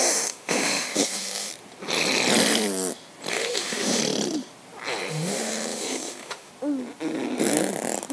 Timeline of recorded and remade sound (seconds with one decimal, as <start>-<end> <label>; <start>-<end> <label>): 0.0-1.5 remade; 1.5-3.3 recorded; 3.3-4.0 remade; 4.0-5.1 recorded; 5.1-6.5 remade; 6.5-8.1 recorded